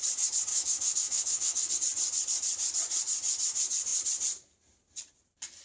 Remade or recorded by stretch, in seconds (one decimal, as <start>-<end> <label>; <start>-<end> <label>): 0.0-0.5 recorded; 0.5-1.7 remade; 1.7-5.6 recorded